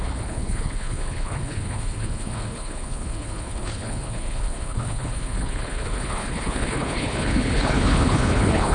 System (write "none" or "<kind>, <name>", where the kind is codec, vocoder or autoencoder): codec, HILCodec